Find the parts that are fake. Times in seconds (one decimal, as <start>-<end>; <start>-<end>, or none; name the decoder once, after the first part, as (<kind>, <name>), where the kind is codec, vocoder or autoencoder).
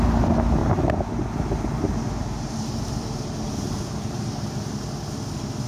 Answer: 2.2-4.8 (vocoder, BigVGAN v2)